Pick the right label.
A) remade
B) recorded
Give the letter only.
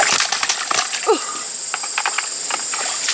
B